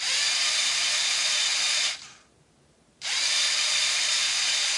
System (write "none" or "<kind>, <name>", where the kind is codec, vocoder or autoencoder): vocoder, BigVGAN v2